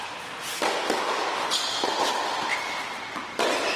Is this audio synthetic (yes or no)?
no